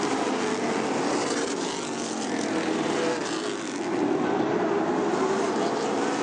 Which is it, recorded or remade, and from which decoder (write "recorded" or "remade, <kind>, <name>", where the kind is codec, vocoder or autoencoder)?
recorded